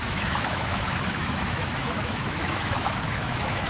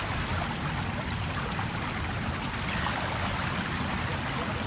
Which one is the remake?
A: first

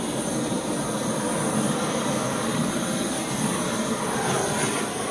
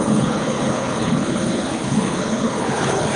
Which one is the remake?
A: second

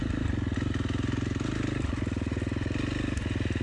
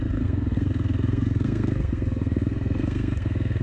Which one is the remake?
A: second